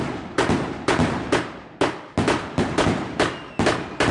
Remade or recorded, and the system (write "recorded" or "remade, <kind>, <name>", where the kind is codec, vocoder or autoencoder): recorded